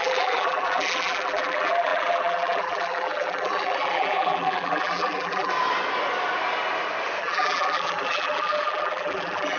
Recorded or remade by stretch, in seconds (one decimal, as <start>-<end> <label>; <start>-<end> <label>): 0.0-5.5 remade; 5.5-7.2 recorded; 7.2-9.6 remade